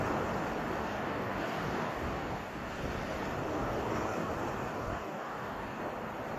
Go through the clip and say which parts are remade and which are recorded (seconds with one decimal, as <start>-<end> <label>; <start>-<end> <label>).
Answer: 0.0-0.8 recorded; 0.8-2.8 remade; 2.8-3.5 recorded; 3.5-4.3 remade; 4.3-4.7 recorded; 4.7-5.8 remade; 5.8-6.4 recorded